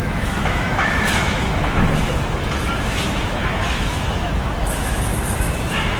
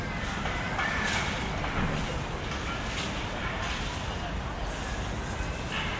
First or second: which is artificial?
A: first